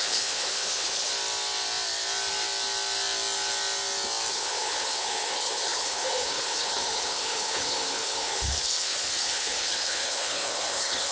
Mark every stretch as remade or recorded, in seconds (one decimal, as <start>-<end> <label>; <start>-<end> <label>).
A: 0.0-1.1 remade; 1.1-4.3 recorded; 4.3-11.1 remade